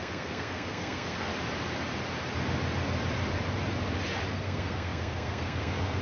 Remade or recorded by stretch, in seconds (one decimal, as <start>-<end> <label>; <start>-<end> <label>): 0.0-1.3 remade; 1.3-4.3 recorded; 4.3-6.0 remade